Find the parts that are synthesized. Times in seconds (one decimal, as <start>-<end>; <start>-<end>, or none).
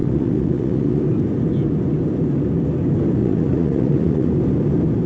0.0-1.0; 3.2-4.3